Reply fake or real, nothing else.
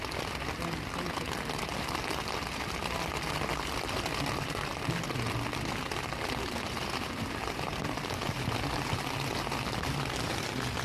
real